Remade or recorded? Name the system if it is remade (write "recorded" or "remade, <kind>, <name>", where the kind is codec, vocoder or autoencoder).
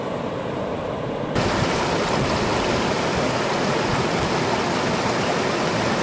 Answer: recorded